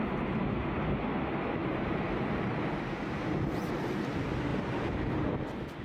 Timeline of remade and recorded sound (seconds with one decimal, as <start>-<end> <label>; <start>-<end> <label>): 0.0-1.6 recorded; 1.6-2.7 remade; 2.7-4.5 recorded; 4.5-5.3 remade; 5.3-5.8 recorded